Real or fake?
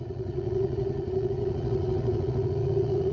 fake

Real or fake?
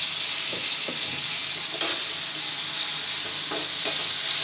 real